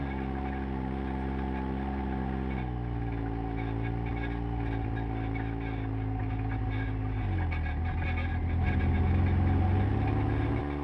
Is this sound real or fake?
real